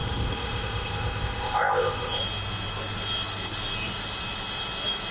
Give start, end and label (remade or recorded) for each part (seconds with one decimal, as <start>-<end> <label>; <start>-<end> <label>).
0.0-2.2 remade; 2.2-5.1 recorded